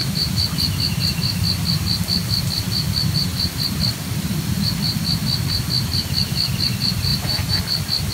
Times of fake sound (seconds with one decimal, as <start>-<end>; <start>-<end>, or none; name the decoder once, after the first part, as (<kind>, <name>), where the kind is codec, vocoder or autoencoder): 7.1-7.6 (vocoder, BigVGAN v2)